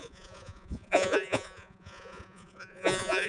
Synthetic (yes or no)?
yes